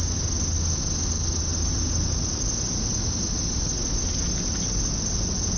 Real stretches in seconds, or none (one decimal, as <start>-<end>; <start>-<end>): 0.0-5.6